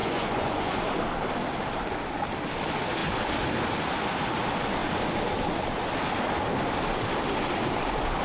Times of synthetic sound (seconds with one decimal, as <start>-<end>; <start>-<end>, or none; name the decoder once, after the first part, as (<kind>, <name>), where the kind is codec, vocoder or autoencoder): 0.0-0.8 (vocoder, Vocos)